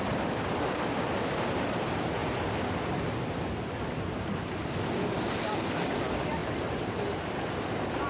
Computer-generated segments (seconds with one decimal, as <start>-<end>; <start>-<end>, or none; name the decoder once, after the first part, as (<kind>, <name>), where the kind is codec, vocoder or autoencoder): 6.4-7.2 (vocoder, BigVGAN v2)